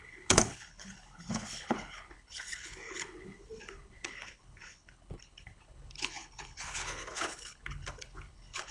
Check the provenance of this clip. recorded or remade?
remade